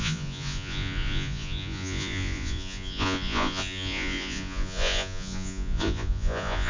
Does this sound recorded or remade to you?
remade